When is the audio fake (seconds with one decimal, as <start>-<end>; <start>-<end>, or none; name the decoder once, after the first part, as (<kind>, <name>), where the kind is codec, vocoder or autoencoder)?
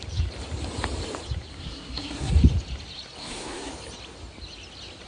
1.5-2.3 (codec, SNAC); 3.2-3.7